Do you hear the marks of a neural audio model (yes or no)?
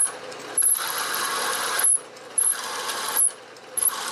no